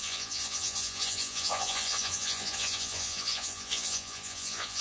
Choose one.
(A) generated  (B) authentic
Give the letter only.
A